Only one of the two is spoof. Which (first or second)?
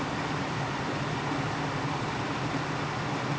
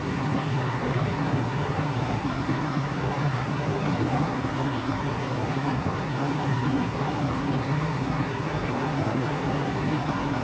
second